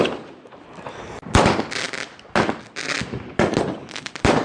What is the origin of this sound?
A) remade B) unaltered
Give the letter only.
B